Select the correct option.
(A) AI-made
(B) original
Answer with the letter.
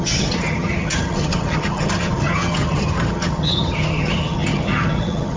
A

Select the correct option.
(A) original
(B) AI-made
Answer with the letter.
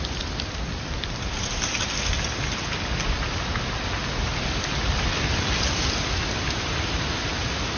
A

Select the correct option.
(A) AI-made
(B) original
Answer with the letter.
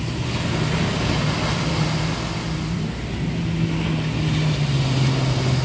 B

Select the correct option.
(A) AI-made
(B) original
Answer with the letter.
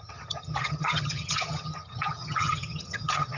A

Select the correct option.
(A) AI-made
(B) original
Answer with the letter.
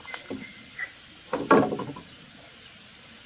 B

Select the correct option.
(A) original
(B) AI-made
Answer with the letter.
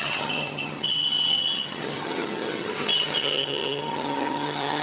B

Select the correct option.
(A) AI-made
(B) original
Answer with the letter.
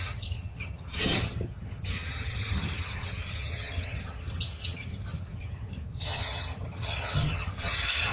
A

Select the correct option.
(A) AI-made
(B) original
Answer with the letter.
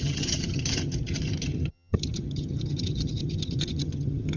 A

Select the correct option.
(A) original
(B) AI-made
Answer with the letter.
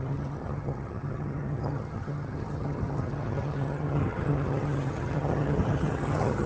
B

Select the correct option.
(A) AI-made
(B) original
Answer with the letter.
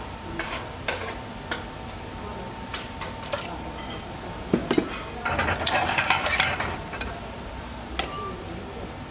B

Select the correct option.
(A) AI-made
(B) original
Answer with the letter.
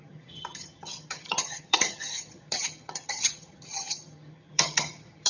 A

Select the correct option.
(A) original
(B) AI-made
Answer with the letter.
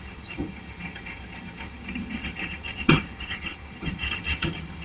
B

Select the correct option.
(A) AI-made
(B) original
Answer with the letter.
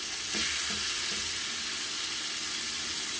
B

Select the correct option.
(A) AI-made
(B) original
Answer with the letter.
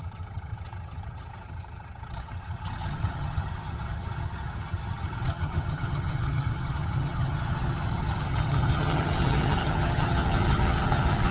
A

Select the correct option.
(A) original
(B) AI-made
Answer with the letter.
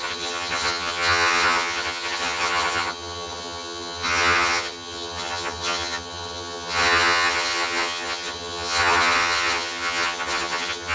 B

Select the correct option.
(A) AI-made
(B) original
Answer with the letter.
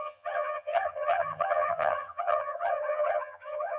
A